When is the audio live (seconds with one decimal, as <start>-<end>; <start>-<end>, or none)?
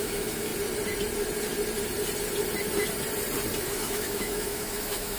0.5-3.6